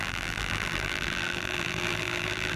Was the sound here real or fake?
fake